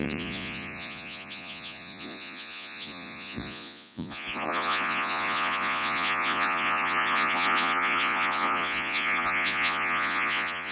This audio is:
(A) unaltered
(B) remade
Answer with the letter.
B